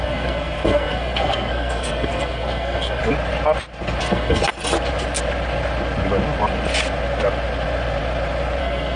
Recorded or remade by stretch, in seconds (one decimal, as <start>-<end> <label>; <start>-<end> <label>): 0.0-3.0 remade; 3.0-4.0 recorded; 4.0-4.4 remade; 4.4-8.6 recorded; 8.6-9.0 remade